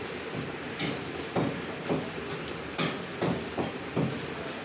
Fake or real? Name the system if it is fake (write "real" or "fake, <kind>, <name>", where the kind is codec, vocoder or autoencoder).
real